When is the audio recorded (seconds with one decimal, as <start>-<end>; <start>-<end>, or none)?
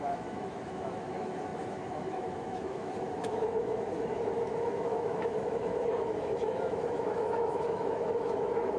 none